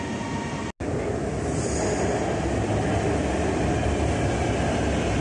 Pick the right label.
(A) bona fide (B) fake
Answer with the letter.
A